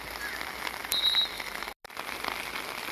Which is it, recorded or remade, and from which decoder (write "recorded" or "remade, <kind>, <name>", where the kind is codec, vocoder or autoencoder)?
recorded